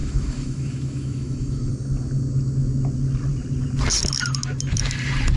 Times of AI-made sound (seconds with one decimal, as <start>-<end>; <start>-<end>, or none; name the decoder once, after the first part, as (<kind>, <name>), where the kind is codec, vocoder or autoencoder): 0.0-1.7 (autoencoder, DAC-VAE)